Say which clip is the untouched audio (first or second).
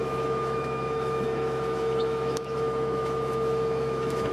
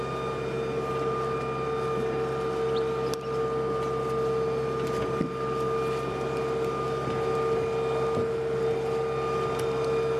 second